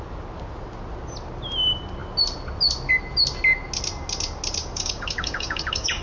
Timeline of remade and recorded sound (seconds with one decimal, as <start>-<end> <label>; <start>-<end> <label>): 0.0-4.6 recorded; 4.6-6.0 remade

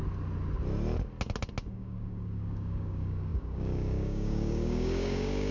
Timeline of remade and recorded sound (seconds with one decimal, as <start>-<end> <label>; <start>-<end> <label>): 0.0-1.7 recorded; 1.7-5.5 remade

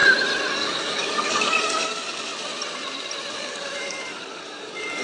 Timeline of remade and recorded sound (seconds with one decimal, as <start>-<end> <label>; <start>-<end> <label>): 0.0-0.5 recorded; 0.5-2.3 remade; 2.3-3.3 recorded; 3.3-5.0 remade

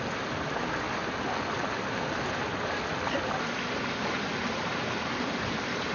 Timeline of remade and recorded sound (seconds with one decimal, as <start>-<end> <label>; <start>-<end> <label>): 0.0-5.9 recorded

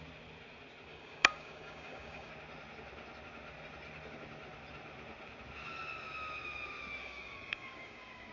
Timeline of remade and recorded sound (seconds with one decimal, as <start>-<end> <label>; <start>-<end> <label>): 0.0-0.9 recorded; 0.9-2.3 remade; 2.3-7.0 recorded; 7.0-8.3 remade

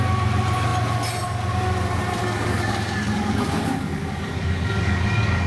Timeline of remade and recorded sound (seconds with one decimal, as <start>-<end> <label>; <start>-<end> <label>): 0.0-2.2 recorded; 2.2-5.5 remade